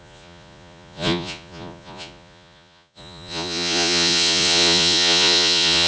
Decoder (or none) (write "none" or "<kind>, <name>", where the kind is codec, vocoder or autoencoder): vocoder, Vocos